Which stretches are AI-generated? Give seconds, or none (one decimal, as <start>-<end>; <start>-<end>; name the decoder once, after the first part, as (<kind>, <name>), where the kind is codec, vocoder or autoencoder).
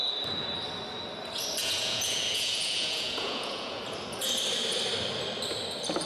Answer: 1.6-3.8 (vocoder, Vocos)